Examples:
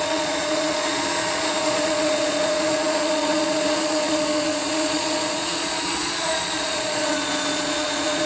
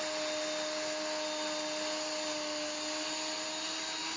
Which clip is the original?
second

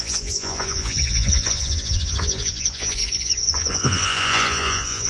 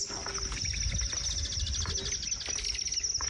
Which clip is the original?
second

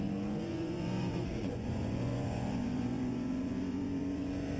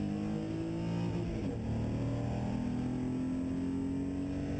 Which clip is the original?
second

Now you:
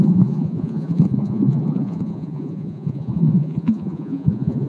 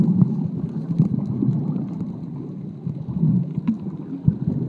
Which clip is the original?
second